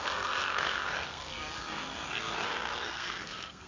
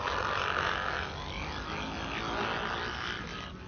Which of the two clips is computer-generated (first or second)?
first